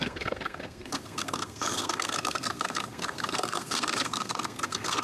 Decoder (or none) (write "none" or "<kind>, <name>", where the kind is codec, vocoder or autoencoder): codec, SNAC